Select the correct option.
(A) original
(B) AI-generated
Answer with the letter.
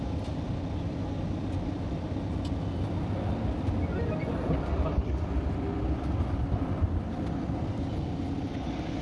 A